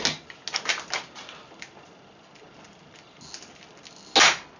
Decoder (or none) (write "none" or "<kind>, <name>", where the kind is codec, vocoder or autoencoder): none